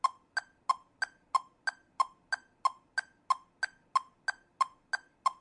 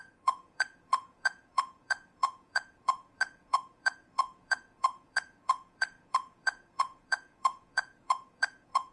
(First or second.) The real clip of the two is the first